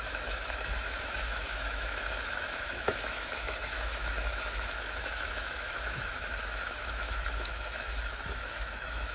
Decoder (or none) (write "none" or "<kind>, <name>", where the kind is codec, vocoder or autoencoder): autoencoder, DAC-VAE